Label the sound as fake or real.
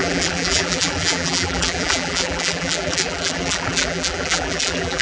fake